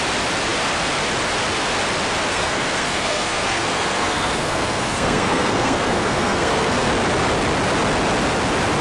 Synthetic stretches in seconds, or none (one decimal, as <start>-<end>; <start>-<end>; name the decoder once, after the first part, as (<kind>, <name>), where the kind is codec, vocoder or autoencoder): 2.3-6.9 (codec, SNAC)